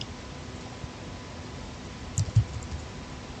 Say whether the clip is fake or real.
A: real